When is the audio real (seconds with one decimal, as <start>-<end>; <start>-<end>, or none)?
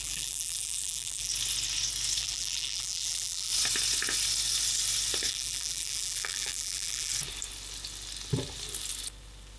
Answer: 1.3-2.2; 3.5-5.3; 7.1-9.6